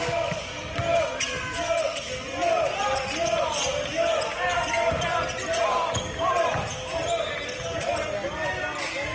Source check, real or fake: real